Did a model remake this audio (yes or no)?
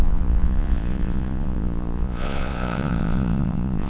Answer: yes